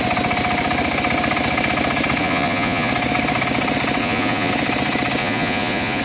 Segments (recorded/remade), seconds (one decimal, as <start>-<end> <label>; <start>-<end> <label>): 0.0-2.2 recorded; 2.2-2.9 remade; 2.9-4.0 recorded; 4.0-4.5 remade; 4.5-5.2 recorded; 5.2-6.0 remade